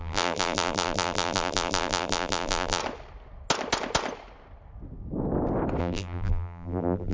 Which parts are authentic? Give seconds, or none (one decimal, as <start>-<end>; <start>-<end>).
2.8-5.8